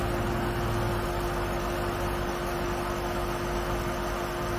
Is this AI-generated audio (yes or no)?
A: no